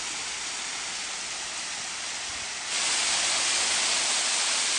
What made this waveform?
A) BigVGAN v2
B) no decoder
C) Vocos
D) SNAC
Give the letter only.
B